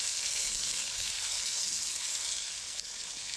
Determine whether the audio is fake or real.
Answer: fake